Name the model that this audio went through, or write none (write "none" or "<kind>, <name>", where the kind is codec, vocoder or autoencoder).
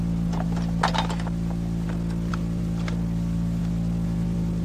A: none